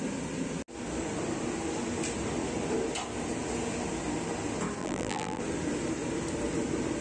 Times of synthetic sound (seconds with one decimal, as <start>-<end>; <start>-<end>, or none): 4.8-5.4